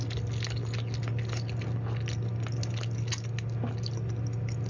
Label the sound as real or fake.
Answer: real